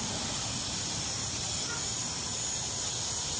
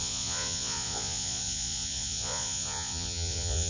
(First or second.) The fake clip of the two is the second